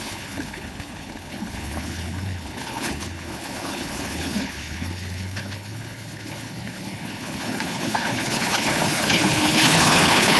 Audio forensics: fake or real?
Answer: fake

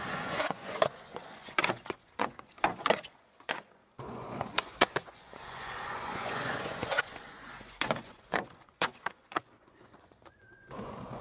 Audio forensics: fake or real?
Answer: fake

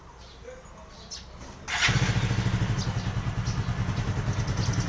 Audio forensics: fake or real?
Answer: real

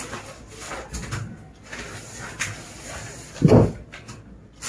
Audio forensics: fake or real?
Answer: real